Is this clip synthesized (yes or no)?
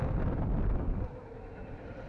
no